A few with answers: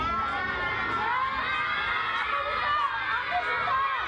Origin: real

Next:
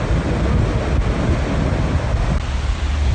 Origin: real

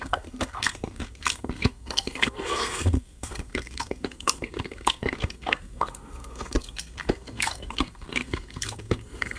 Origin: fake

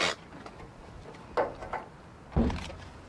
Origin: real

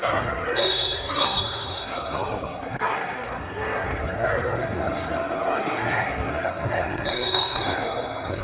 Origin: fake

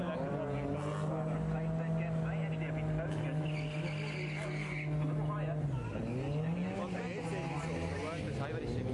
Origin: real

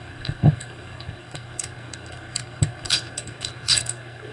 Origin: fake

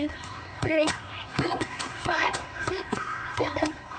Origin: fake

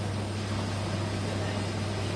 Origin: real